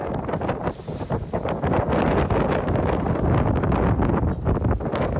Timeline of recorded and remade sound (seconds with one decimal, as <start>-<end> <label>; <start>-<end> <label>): 0.0-5.2 recorded